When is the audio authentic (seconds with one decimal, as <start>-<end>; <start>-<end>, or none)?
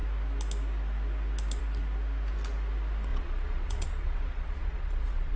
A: 0.0-3.1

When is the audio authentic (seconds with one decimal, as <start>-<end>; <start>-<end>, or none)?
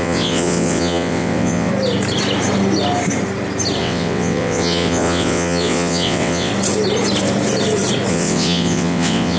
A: 1.7-3.8; 6.5-8.1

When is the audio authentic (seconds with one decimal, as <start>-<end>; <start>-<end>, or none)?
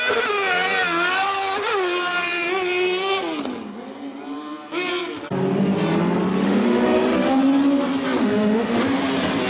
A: 0.0-6.3; 7.4-8.2; 8.8-9.5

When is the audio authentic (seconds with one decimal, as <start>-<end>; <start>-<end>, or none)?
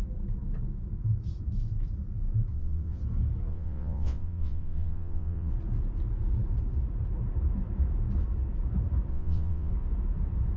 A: 0.0-2.5; 3.0-3.5; 5.5-9.1; 9.7-10.6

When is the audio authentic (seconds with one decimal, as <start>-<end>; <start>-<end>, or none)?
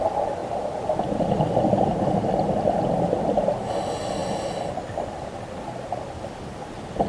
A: 0.0-7.1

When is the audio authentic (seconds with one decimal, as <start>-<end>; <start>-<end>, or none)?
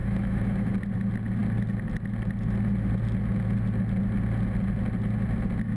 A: 0.7-5.8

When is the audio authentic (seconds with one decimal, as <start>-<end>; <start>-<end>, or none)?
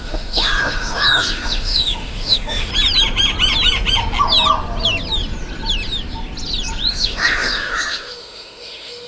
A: 2.7-6.9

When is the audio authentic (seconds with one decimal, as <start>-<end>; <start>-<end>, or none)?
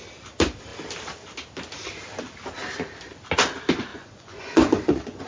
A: 0.0-3.9